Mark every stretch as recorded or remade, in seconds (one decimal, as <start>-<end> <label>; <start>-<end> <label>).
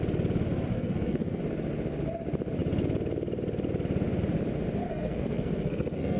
0.0-0.7 recorded; 0.7-1.4 remade; 1.4-4.8 recorded; 4.8-6.2 remade